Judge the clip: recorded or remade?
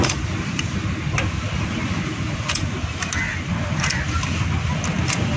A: recorded